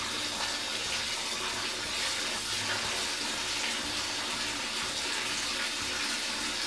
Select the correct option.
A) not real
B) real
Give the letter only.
B